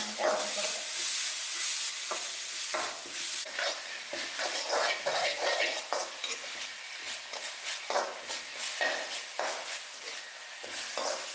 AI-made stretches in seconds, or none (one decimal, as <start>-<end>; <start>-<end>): none